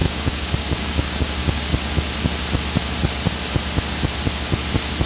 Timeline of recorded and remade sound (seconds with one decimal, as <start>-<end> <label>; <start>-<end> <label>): 0.0-1.7 remade; 1.7-5.1 recorded

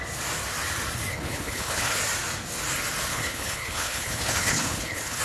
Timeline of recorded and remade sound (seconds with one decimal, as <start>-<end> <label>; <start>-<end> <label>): 0.0-1.1 recorded; 1.1-2.0 remade; 2.0-3.1 recorded; 3.1-5.2 remade

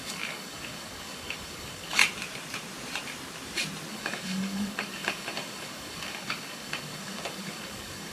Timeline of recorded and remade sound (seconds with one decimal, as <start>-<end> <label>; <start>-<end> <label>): 0.0-2.0 remade; 2.0-3.9 recorded; 3.9-8.1 remade

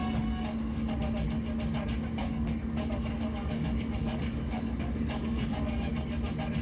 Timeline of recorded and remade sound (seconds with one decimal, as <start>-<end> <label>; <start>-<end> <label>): 0.0-0.9 remade; 0.9-2.2 recorded; 2.2-5.9 remade; 5.9-6.6 recorded

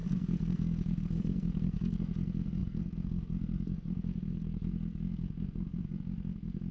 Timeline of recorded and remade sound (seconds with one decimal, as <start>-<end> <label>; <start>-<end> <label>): 0.0-6.7 remade